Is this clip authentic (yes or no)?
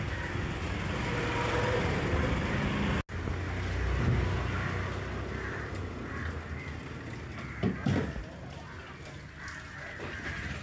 yes